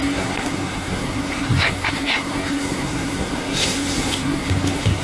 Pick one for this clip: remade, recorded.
remade